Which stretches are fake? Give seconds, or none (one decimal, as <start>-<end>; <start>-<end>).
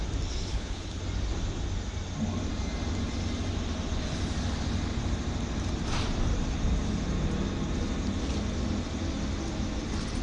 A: 0.5-1.0